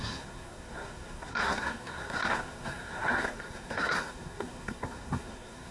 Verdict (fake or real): fake